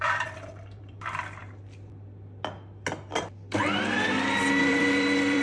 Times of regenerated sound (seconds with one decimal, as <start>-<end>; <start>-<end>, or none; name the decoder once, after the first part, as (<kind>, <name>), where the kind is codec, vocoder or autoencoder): 0.0-1.4 (vocoder, BigVGAN v2); 4.6-5.4

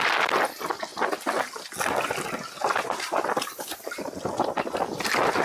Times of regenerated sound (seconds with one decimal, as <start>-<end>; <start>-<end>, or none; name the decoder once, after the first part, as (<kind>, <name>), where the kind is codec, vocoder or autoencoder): 2.6-4.1 (vocoder, BigVGAN v2)

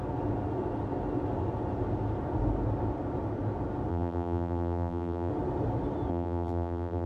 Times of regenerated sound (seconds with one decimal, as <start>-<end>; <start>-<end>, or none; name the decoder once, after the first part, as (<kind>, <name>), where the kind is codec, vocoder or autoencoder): 3.9-5.3 (vocoder, BigVGAN v2); 6.1-7.1

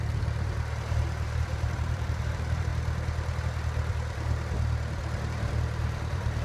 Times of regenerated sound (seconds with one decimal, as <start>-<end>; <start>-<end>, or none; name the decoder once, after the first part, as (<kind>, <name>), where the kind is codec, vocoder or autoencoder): 0.0-2.7 (vocoder, BigVGAN v2); 5.3-6.4

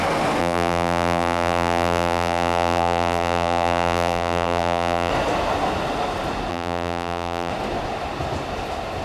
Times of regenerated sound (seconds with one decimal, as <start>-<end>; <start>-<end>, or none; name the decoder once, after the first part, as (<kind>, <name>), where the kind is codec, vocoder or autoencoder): 0.4-5.1 (vocoder, BigVGAN v2); 6.5-7.5

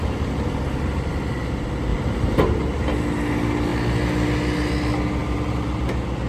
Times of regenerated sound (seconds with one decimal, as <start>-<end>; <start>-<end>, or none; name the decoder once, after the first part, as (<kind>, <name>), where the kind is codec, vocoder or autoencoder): 1.9-2.4 (vocoder, BigVGAN v2); 5.2-5.8

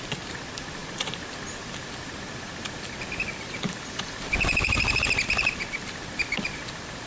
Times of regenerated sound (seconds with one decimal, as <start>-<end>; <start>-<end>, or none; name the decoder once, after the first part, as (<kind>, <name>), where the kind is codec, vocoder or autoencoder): none

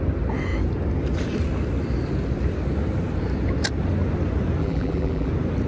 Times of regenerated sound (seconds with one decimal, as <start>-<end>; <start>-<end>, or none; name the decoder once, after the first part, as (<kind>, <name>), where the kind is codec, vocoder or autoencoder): 4.6-5.3 (vocoder, BigVGAN v2)